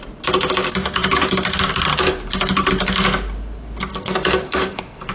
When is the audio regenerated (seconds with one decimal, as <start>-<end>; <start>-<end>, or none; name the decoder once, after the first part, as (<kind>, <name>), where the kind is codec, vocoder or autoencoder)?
3.9-5.1 (codec, SNAC)